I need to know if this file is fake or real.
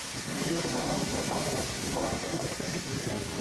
fake